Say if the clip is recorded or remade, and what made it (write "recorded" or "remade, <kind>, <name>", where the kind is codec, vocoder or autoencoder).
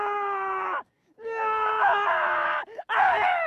remade, codec, DAC